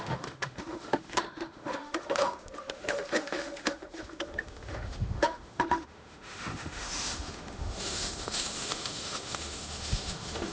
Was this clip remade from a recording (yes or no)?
yes